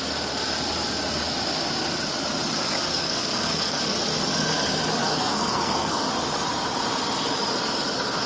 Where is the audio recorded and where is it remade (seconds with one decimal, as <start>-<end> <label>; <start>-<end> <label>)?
0.0-2.9 recorded; 2.9-3.8 remade; 3.8-5.0 recorded; 5.0-6.1 remade; 6.1-8.3 recorded